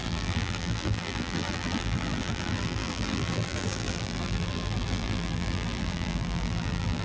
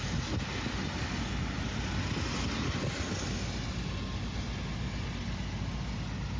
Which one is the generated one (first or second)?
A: first